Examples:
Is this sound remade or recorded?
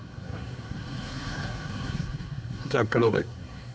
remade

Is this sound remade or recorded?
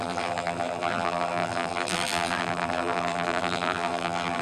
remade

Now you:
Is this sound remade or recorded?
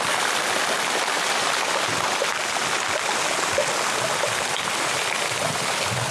recorded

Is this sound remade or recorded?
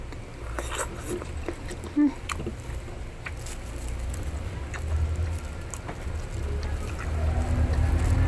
recorded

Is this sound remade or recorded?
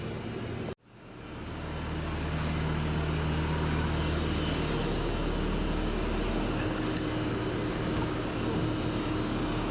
recorded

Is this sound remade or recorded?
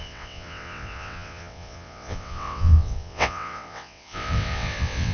remade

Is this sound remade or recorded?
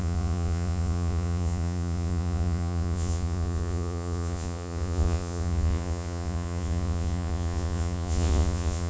remade